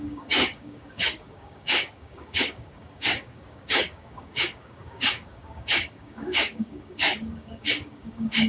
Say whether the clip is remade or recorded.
remade